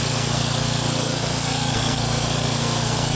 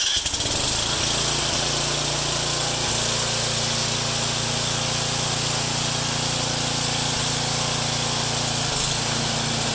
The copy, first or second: first